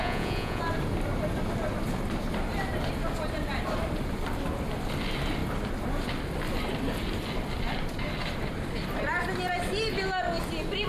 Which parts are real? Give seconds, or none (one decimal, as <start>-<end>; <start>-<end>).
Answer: 0.6-10.9